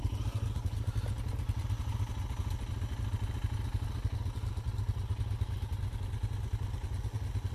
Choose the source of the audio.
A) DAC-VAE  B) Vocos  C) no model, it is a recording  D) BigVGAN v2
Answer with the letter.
C